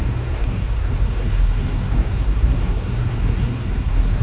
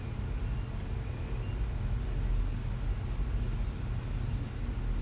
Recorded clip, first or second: second